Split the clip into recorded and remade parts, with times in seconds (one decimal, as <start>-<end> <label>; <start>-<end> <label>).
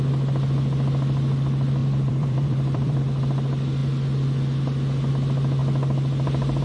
0.0-1.8 recorded; 1.8-3.0 remade; 3.0-6.6 recorded